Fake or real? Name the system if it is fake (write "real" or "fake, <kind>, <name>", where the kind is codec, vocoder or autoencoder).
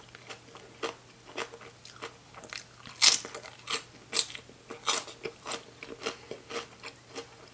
real